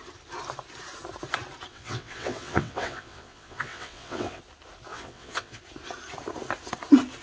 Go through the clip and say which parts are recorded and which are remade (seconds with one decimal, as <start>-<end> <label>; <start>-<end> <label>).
0.0-1.7 recorded; 1.7-4.4 remade; 4.4-4.9 recorded; 4.9-5.6 remade; 5.6-7.2 recorded